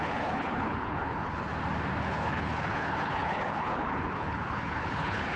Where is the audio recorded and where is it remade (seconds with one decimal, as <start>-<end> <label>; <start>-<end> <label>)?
0.0-1.5 remade; 1.5-2.0 recorded; 2.0-5.4 remade